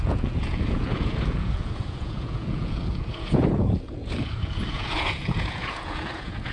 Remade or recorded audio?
remade